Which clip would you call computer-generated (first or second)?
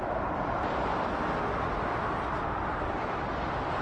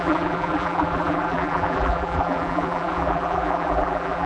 second